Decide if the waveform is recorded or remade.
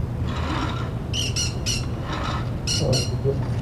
recorded